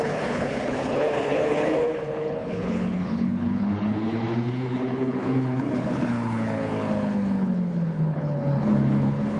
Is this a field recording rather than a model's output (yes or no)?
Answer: no